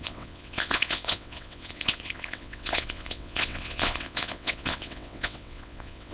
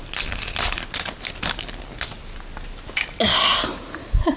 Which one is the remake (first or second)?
first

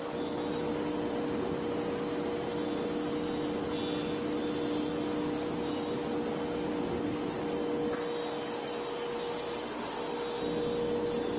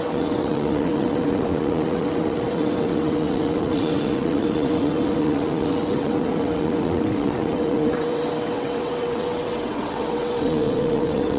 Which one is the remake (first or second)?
second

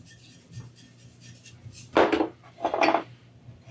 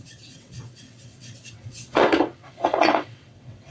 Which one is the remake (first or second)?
second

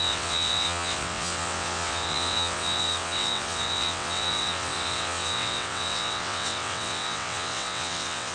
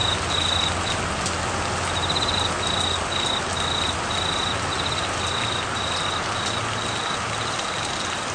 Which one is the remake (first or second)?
first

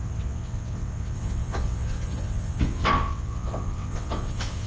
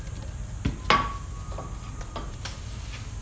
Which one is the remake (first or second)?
first